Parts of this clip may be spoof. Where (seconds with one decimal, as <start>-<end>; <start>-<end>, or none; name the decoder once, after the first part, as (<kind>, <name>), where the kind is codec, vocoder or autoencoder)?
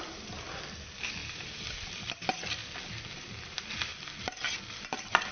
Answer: 0.0-1.2 (vocoder, BigVGAN v2); 1.9-2.6; 3.2-5.3